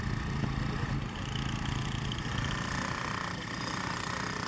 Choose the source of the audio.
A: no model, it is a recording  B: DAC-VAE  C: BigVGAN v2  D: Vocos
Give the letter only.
C